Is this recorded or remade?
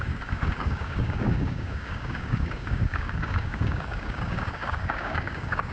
remade